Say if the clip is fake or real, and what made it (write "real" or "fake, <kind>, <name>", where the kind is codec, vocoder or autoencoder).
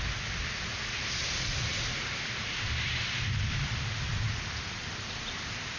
real